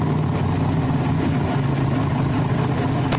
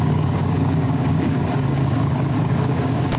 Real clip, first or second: first